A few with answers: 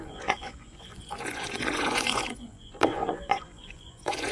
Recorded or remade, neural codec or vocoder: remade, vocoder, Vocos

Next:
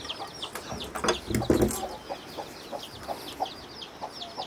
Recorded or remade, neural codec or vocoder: recorded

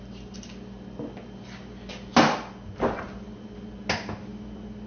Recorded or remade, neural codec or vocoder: recorded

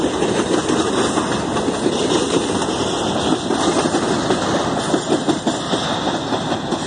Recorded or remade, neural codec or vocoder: recorded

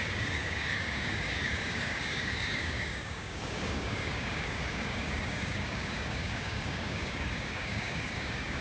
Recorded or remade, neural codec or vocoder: remade, codec, DAC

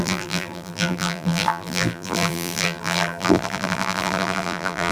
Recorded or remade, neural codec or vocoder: remade, vocoder, BigVGAN v2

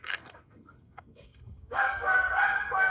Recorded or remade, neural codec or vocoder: remade, codec, SNAC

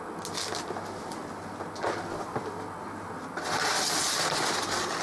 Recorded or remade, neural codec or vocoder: recorded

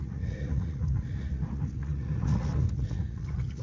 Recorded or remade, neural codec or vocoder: remade, vocoder, Vocos